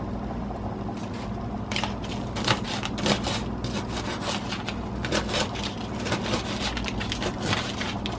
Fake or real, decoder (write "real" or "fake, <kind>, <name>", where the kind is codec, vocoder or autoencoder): real